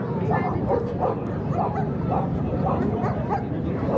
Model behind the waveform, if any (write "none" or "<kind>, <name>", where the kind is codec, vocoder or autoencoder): vocoder, BigVGAN v2